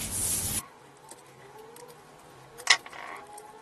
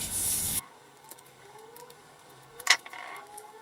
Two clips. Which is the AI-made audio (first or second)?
second